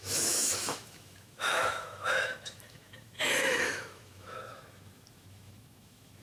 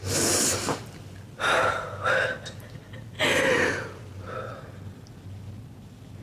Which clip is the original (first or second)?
second